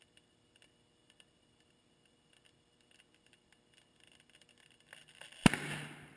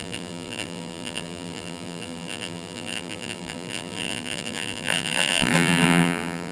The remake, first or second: second